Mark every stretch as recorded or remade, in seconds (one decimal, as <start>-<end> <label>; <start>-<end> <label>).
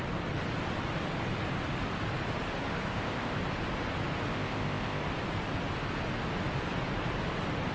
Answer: 0.0-2.9 recorded; 2.9-3.4 remade; 3.4-4.3 recorded; 4.3-5.0 remade; 5.0-7.7 recorded